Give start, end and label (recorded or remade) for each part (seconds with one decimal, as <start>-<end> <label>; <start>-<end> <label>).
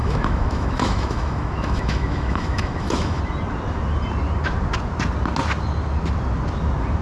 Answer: 0.0-3.2 remade; 3.2-7.0 recorded